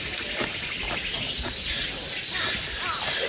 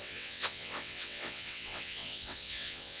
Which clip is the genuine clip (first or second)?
first